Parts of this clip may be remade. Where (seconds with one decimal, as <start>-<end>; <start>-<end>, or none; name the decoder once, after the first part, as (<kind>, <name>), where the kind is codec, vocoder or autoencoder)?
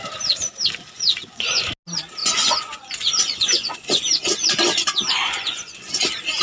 0.8-1.7 (vocoder, Vocos); 2.2-6.0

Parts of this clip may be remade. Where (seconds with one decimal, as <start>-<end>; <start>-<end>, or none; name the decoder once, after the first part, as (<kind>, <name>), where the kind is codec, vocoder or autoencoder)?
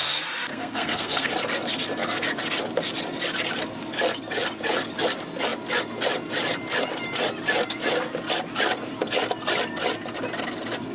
0.5-1.3 (codec, SNAC)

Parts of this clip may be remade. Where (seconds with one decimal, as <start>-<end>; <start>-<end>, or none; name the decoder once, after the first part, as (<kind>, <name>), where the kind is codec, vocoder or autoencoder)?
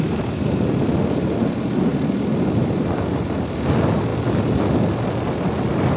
1.9-3.2 (vocoder, BigVGAN v2)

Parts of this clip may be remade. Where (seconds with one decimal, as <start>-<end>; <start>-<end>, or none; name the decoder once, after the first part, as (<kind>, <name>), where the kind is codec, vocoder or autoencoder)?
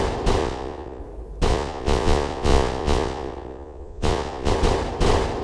0.4-1.0 (vocoder, Vocos); 1.5-4.5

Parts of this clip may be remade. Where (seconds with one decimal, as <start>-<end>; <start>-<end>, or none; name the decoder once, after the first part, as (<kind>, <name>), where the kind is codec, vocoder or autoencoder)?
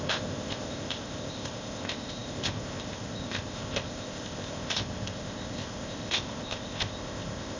0.0-7.6 (codec, ZipCodec)